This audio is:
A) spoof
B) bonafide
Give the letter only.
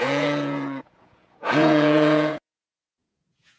A